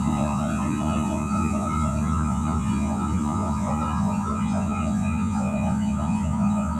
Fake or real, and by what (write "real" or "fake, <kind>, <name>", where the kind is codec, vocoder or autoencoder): fake, vocoder, Vocos